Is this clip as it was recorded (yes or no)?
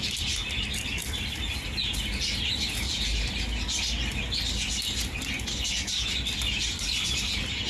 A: yes